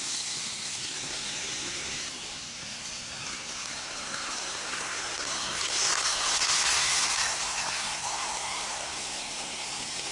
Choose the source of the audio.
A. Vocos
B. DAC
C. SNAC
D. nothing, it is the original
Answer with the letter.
C